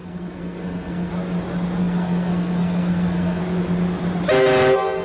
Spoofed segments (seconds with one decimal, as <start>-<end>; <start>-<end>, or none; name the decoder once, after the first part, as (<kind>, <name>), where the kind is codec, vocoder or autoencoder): 0.0-1.1 (codec, SNAC); 1.8-3.4